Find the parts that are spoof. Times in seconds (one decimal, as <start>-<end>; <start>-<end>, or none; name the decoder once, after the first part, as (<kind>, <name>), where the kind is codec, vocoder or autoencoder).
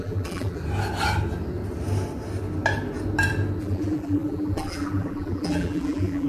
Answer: 0.0-0.6 (vocoder, BigVGAN v2); 3.6-6.3